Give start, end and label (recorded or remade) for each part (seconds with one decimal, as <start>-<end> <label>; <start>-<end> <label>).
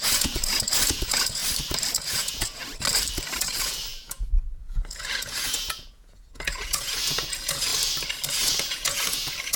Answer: 0.0-1.4 remade; 1.4-1.9 recorded; 1.9-2.6 remade; 2.6-3.4 recorded; 3.4-7.7 remade; 7.7-8.3 recorded; 8.3-9.6 remade